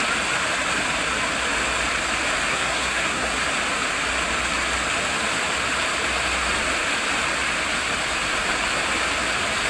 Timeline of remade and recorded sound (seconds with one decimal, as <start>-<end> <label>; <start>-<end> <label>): 0.0-2.5 recorded; 2.5-3.3 remade; 3.3-9.7 recorded